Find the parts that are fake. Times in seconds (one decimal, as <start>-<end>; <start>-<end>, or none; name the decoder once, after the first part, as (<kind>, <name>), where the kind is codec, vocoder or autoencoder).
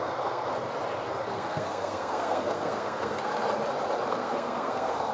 0.0-0.5 (codec, SNAC); 1.2-3.3; 4.1-5.1